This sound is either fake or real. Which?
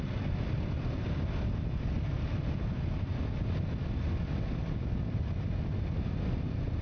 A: real